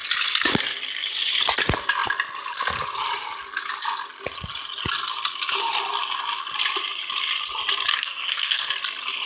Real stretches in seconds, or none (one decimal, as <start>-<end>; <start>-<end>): 0.0-7.9; 8.7-9.3